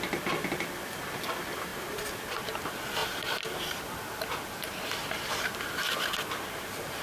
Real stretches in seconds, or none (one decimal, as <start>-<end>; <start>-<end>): 0.0-7.0